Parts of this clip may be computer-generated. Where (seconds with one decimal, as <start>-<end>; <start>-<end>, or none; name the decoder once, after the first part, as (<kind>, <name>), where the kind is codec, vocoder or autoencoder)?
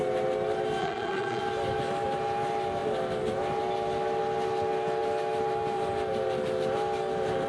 0.8-1.4 (vocoder, Vocos)